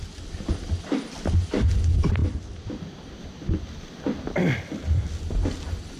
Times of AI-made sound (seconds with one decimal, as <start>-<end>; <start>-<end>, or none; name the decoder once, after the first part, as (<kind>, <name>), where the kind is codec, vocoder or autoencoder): none